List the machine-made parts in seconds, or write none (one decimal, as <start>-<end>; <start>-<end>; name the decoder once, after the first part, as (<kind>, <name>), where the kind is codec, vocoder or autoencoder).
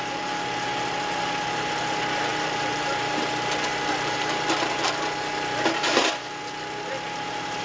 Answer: none